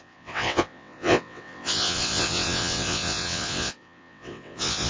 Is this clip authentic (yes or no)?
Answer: no